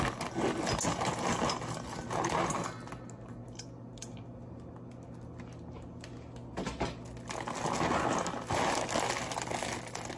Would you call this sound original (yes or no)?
yes